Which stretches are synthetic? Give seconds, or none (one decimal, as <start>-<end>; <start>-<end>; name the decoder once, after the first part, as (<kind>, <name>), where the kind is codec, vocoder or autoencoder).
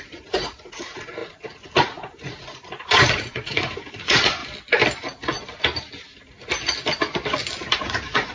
0.0-4.4 (vocoder, Vocos); 7.8-8.3